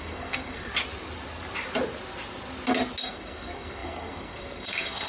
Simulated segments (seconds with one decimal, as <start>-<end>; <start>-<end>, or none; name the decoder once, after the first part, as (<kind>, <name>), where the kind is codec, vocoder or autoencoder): 0.0-0.7 (codec, SNAC); 3.0-5.1